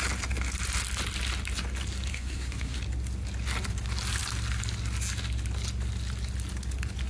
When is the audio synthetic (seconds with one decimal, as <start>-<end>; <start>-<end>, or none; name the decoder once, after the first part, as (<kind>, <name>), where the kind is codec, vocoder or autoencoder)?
2.1-2.8 (codec, SNAC)

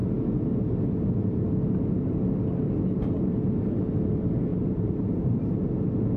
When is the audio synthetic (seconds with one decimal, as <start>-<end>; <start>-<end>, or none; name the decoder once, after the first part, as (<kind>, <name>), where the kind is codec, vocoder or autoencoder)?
4.5-5.5 (vocoder, BigVGAN v2)

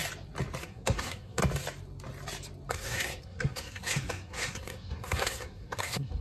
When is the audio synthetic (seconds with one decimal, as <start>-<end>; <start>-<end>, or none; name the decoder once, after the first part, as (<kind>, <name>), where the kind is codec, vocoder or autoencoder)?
0.6-1.4 (codec, SNAC); 2.7-6.2

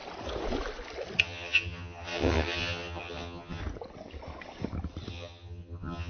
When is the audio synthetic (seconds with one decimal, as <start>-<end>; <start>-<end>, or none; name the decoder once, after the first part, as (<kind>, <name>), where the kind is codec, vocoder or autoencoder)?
1.2-3.6 (vocoder, HiFi-GAN); 5.1-6.1

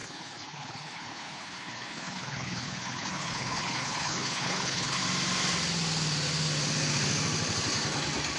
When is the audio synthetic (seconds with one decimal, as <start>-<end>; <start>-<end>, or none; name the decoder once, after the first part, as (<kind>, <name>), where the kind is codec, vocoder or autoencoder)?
0.0-5.0 (codec, HILCodec)

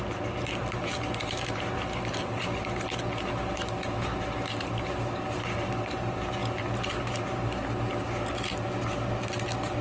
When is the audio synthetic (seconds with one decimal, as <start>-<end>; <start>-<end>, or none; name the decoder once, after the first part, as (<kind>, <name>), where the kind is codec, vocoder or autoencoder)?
none

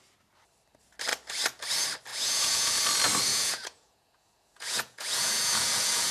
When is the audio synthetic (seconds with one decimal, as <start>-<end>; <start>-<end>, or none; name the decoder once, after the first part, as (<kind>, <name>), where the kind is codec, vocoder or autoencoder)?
2.1-2.8 (vocoder, Vocos); 3.3-6.1